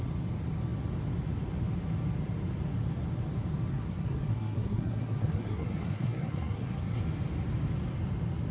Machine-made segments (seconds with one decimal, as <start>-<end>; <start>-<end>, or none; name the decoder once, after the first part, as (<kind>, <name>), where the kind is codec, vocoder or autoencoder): 3.7-7.0 (codec, SNAC)